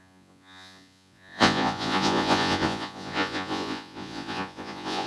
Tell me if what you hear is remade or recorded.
remade